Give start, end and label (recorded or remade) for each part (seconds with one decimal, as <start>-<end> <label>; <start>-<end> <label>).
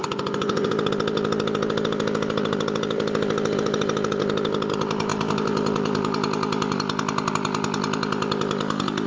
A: 0.0-0.7 remade; 0.7-9.1 recorded